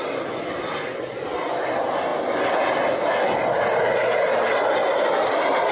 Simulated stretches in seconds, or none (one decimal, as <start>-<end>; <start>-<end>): none